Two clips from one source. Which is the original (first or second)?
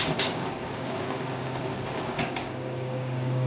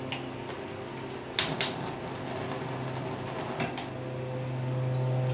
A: second